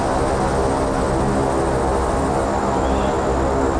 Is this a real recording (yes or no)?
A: yes